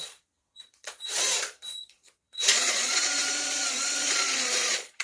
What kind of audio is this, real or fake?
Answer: fake